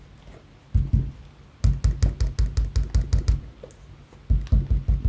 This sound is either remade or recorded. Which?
recorded